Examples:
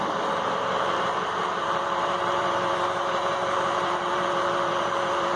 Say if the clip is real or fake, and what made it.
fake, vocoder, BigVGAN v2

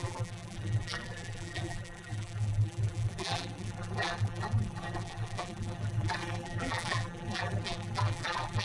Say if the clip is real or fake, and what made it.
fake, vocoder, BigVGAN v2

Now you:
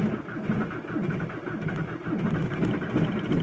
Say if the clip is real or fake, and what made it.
real